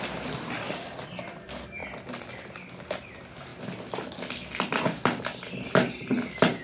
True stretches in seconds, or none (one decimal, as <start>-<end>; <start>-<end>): 0.0-6.6